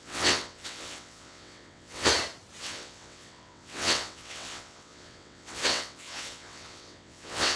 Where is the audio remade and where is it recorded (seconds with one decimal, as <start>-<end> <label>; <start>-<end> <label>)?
0.0-2.1 remade; 2.1-2.6 recorded; 2.6-7.6 remade